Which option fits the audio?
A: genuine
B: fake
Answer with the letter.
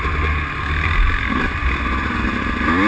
A